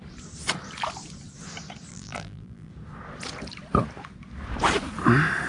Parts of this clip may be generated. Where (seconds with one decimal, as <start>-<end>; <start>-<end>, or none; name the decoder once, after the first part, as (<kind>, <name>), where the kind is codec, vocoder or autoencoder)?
1.9-2.7 (vocoder, BigVGAN v2)